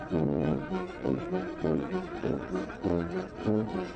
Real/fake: fake